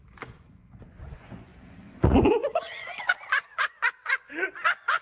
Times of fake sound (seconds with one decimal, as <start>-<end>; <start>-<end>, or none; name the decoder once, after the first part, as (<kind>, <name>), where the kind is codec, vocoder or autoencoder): 0.0-5.0 (vocoder, Vocos)

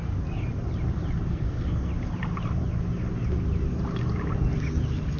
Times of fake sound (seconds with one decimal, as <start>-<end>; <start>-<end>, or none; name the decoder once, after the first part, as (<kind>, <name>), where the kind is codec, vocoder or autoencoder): 1.3-1.9 (codec, SNAC)